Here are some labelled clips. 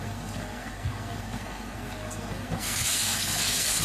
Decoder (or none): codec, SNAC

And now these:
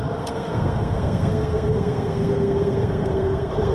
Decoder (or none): codec, SNAC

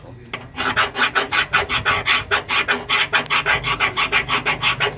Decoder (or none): none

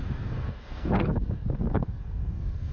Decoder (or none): codec, SNAC